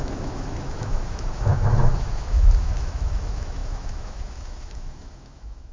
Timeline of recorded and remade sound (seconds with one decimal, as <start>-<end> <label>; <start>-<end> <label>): 0.0-5.7 remade